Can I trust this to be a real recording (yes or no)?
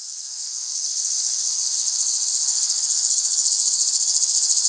no